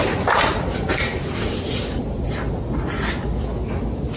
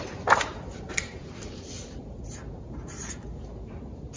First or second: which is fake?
second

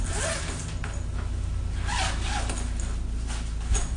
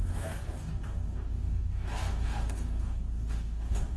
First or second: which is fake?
second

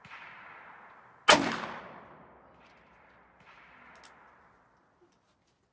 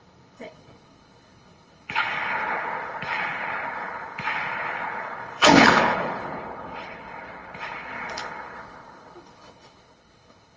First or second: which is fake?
second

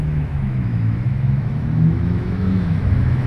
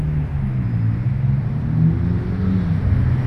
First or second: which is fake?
first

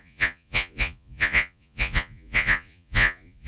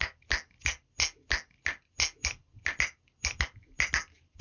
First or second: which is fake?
first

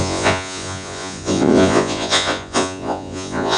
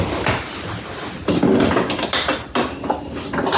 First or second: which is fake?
first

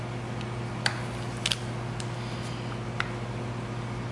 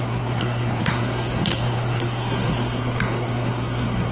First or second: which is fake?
second